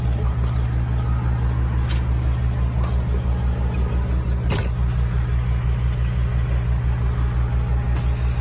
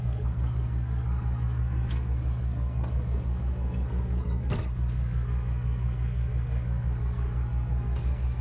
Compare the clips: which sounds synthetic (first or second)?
second